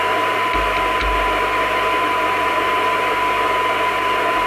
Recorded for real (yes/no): no